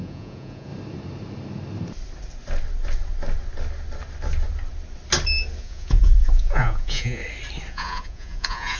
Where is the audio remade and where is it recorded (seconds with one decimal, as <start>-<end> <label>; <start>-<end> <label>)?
0.0-0.7 remade; 0.7-5.6 recorded; 5.6-7.2 remade; 7.2-7.7 recorded; 7.7-8.8 remade